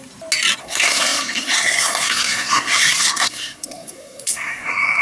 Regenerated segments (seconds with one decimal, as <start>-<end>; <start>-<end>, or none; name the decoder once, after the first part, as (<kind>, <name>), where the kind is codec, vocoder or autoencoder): 0.6-5.0 (codec, SNAC)